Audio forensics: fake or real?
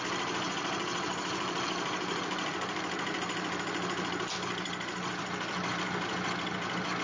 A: real